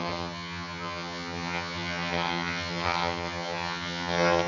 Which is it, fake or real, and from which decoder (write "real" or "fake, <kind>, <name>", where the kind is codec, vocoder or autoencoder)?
fake, vocoder, HiFi-GAN